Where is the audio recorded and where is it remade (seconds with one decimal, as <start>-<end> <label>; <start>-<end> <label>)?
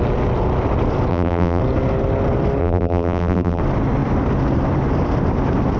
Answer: 0.0-1.1 recorded; 1.1-1.6 remade; 1.6-2.6 recorded; 2.6-3.6 remade; 3.6-5.8 recorded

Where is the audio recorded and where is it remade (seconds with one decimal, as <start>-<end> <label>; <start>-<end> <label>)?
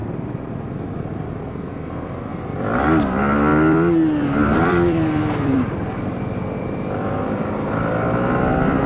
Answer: 0.0-1.7 remade; 1.7-2.3 recorded; 2.3-2.8 remade; 2.8-3.5 recorded; 3.5-7.8 remade; 7.8-8.9 recorded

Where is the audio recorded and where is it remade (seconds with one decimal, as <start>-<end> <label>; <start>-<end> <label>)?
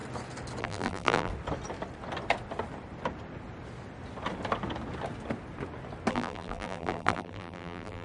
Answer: 0.0-0.6 recorded; 0.6-1.3 remade; 1.3-6.1 recorded; 6.1-8.0 remade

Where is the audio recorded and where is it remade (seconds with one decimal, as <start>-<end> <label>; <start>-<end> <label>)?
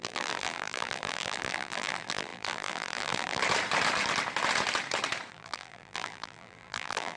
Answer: 0.0-3.4 remade; 3.4-5.3 recorded; 5.3-7.2 remade